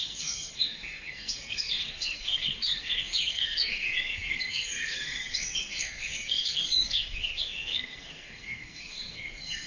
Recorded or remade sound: remade